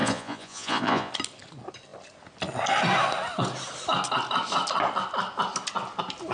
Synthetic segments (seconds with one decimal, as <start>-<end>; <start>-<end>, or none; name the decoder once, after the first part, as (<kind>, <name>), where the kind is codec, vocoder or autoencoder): 0.0-1.1 (vocoder, Vocos)

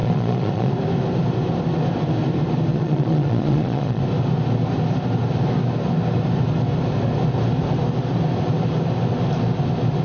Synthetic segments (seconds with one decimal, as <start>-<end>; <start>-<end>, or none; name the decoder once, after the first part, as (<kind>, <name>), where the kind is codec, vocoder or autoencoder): 0.0-0.7 (vocoder, Vocos); 2.7-4.0

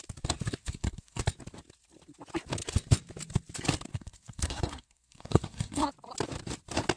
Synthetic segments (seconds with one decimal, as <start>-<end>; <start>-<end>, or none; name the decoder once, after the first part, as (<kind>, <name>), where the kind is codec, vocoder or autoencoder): 0.6-1.2 (codec, SNAC); 3.9-5.9

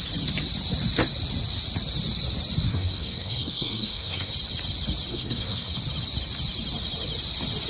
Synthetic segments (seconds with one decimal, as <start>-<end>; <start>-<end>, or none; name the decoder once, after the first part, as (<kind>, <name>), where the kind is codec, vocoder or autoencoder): 2.7-4.3 (codec, SNAC); 5.1-5.7

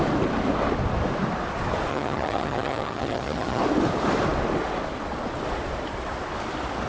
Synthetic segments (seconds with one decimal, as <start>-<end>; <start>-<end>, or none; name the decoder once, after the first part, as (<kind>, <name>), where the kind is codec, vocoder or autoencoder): 1.9-3.6 (vocoder, HiFi-GAN)

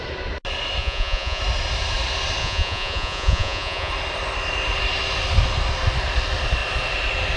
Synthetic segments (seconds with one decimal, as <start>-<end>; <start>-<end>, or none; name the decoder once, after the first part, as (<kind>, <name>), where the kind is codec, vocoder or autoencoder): 0.8-1.4 (vocoder, Vocos); 2.4-3.9